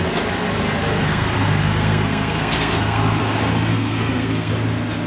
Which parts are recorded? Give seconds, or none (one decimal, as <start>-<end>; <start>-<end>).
0.0-1.0; 3.2-3.7; 4.5-5.1